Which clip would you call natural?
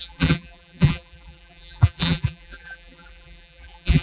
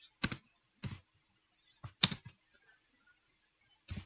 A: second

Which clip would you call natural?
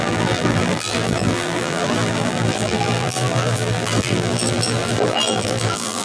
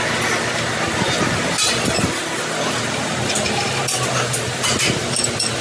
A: second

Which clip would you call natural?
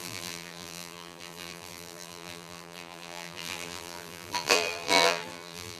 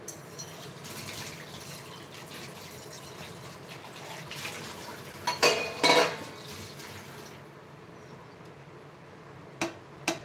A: second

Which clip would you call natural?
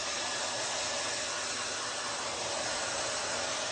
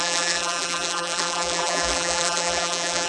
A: first